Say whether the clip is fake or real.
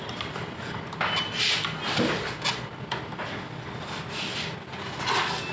real